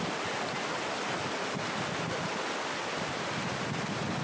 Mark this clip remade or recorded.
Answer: recorded